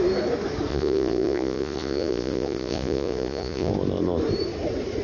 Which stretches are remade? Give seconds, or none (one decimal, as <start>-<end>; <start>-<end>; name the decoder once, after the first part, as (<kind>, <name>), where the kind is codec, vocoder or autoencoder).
0.7-3.7 (vocoder, Vocos)